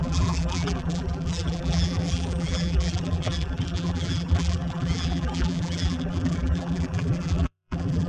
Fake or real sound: fake